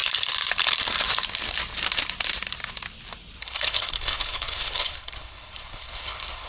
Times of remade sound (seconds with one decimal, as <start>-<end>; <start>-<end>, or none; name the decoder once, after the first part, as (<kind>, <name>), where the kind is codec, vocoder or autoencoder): 3.4-6.5 (codec, HILCodec)